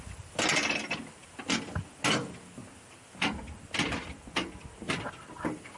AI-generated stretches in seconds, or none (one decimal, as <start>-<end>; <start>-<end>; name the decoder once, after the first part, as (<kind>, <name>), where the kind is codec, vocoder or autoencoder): none

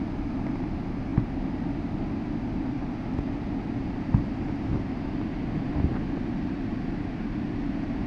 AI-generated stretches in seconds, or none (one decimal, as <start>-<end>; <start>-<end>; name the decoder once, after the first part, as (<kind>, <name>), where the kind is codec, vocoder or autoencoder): none

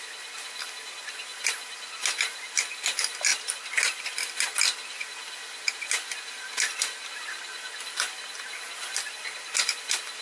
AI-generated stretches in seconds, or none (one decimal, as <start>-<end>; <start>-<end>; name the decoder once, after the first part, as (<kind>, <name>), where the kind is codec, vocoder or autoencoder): none